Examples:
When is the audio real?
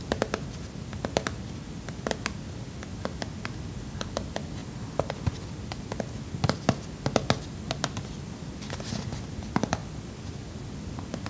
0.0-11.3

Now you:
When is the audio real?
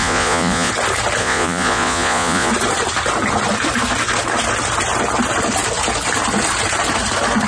0.7-1.2; 2.5-7.5